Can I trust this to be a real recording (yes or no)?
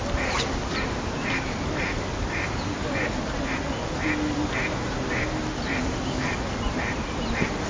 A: yes